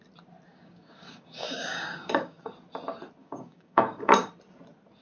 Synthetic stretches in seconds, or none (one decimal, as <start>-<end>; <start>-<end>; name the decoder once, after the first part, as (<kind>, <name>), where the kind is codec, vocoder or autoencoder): 0.5-2.5 (codec, DAC); 3.2-4.3